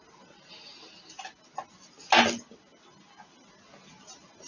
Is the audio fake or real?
real